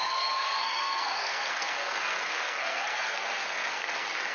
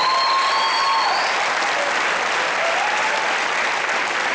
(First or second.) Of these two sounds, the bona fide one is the second